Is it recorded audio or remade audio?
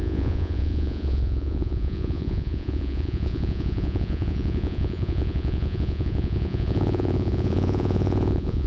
remade